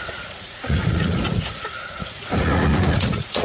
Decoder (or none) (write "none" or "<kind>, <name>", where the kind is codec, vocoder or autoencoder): vocoder, Vocos